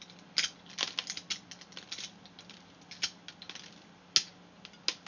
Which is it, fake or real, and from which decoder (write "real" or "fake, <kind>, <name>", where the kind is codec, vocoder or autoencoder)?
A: real